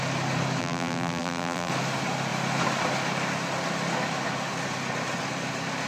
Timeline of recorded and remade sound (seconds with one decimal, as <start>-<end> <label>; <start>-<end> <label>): 0.0-0.6 recorded; 0.6-1.7 remade; 1.7-5.9 recorded